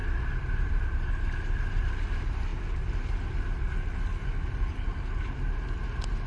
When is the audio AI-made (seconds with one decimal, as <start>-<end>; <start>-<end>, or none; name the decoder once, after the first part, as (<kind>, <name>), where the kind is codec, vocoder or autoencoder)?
none